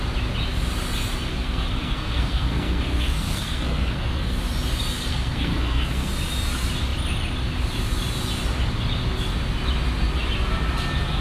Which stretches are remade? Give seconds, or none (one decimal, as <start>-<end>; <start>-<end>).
1.3-4.4; 5.1-6.1